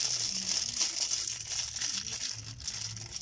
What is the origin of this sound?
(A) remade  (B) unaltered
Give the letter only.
B